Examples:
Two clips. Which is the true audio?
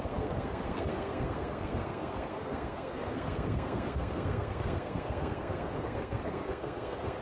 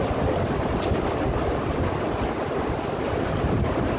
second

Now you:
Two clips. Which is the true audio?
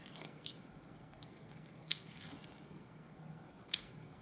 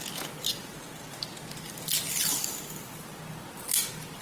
second